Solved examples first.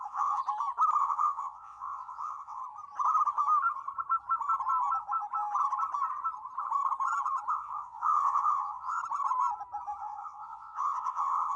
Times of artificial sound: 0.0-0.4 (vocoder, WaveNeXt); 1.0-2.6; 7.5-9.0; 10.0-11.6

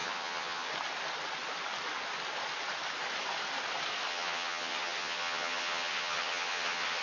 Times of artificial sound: 0.0-0.7 (vocoder, HiFi-GAN); 4.1-7.0

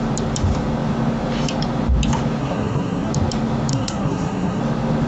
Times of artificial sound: 2.4-3.1 (codec, SNAC); 3.7-4.6

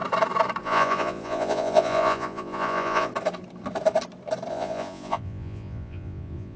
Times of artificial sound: 0.6-3.1 (vocoder, Vocos); 4.5-6.6

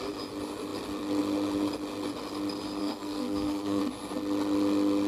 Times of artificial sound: 2.8-3.8 (codec, SNAC)

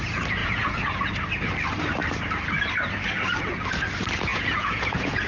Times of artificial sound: 0.4-1.1 (vocoder, Vocos); 4.3-5.3

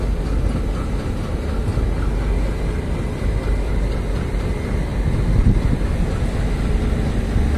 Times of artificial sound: none